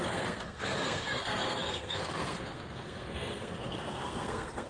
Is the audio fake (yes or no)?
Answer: yes